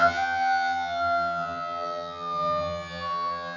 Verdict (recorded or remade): remade